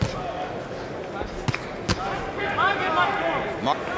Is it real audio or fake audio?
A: real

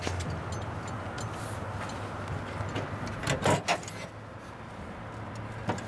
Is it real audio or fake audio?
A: real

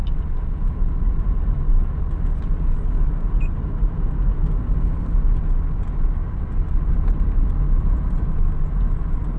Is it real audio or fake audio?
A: real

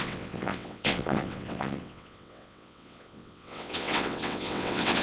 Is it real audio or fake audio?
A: fake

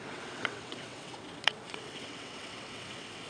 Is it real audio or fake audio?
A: fake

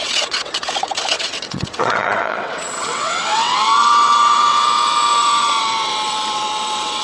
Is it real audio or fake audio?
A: fake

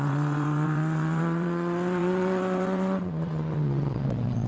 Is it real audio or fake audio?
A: fake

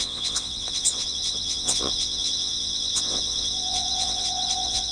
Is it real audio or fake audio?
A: fake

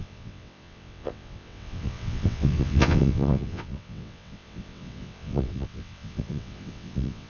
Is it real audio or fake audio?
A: fake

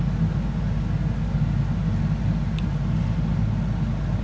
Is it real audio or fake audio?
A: real